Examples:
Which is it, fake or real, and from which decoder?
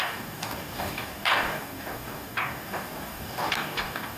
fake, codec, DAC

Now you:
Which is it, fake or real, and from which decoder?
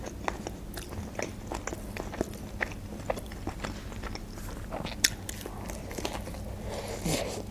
real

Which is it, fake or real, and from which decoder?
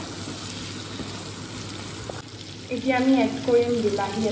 real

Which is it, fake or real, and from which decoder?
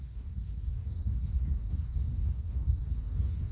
fake, codec, DAC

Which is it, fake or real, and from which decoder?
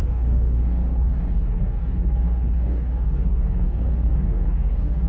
fake, codec, DAC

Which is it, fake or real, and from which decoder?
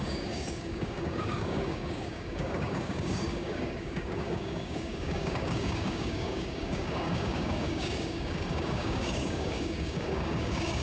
fake, codec, DAC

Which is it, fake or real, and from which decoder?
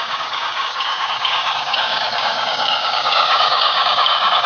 fake, codec, DAC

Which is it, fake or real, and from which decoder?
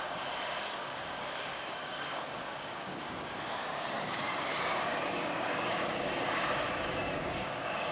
fake, codec, DAC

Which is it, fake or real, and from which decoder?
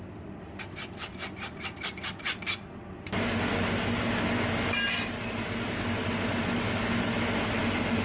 real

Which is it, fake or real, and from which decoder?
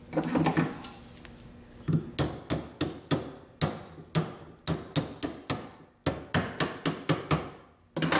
real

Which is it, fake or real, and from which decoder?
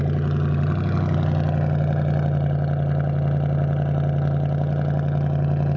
real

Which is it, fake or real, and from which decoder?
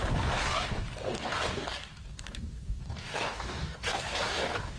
fake, codec, DAC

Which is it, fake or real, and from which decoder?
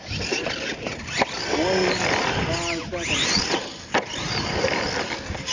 real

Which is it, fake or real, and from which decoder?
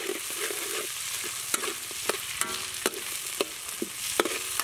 real